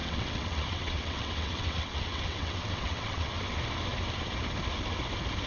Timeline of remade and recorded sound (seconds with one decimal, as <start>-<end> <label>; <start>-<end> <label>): 0.0-3.3 remade; 3.3-5.5 recorded